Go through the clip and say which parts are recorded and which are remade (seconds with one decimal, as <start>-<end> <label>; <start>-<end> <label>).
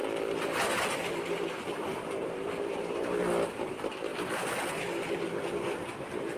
0.0-4.1 recorded; 4.1-6.0 remade; 6.0-6.4 recorded